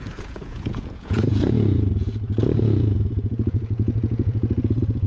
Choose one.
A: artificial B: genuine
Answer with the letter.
A